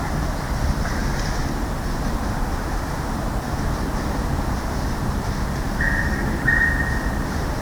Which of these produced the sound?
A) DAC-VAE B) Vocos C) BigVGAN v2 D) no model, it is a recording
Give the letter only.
D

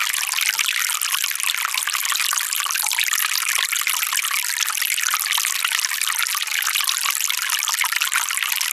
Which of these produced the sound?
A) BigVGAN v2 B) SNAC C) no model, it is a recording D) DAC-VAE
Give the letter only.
C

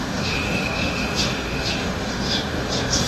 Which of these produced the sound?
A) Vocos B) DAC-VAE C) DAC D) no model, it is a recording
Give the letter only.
B